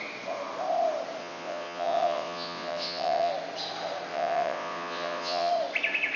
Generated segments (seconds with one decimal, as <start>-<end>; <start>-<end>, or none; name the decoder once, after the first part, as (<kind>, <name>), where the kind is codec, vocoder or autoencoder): 1.2-3.3 (vocoder, WaveNeXt); 4.1-5.5